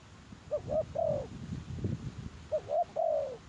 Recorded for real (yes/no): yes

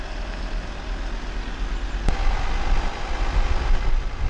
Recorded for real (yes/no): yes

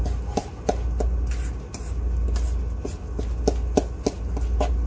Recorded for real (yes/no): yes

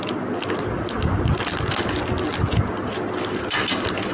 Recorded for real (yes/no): yes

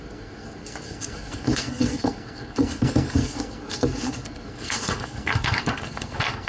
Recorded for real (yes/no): no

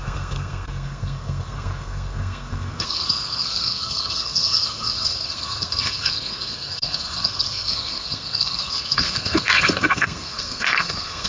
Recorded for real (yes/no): no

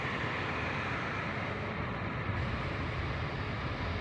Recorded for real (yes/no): yes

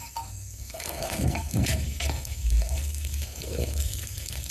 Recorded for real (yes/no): no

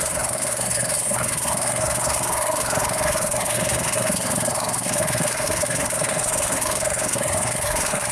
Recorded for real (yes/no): no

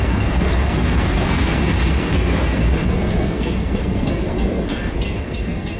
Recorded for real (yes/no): no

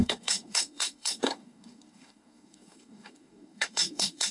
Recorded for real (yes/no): no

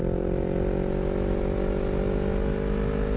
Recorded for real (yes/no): yes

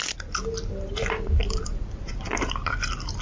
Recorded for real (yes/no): yes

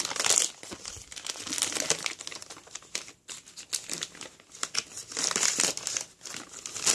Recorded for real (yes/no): yes